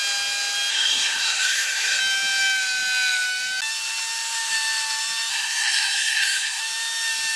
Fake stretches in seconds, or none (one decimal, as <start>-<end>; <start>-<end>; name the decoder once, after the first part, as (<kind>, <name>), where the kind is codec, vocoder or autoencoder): 0.7-2.0 (codec, SNAC); 5.3-6.6